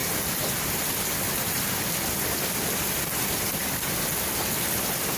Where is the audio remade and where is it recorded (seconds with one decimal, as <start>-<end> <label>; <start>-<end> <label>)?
0.0-1.9 remade; 1.9-3.6 recorded; 3.6-4.8 remade; 4.8-5.2 recorded